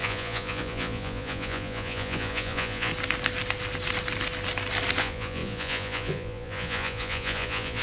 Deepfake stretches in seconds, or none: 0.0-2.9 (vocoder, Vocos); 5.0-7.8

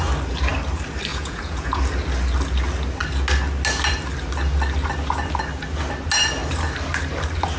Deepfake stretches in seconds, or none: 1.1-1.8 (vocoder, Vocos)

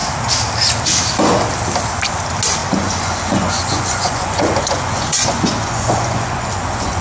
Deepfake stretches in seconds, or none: 2.6-7.0 (vocoder, Vocos)

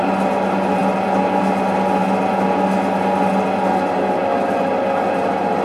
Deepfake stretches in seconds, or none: none

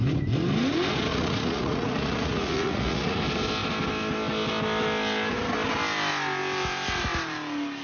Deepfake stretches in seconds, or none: 1.1-3.2 (vocoder, Vocos)

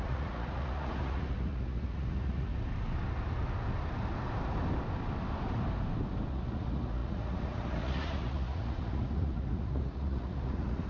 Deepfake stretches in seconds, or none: 0.0-2.5 (vocoder, Vocos); 6.3-10.9

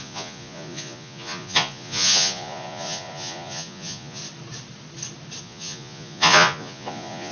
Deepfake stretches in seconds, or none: 0.0-4.2 (vocoder, Vocos); 5.4-7.3